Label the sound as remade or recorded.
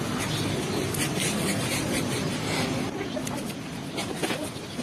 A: recorded